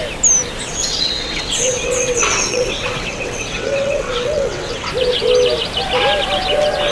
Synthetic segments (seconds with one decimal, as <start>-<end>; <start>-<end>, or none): 0.8-4.9